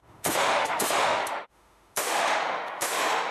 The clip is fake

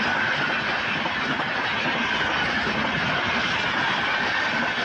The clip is real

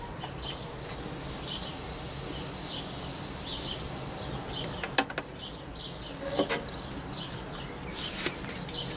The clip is real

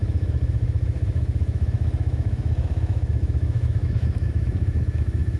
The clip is fake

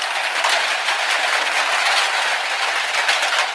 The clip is real